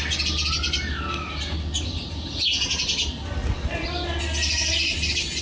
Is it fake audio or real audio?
real